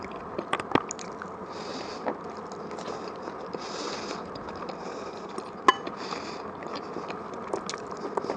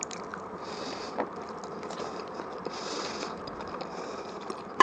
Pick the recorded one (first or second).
first